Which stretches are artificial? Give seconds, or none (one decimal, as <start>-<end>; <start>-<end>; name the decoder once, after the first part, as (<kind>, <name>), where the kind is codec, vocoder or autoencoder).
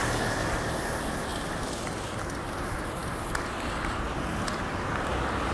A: none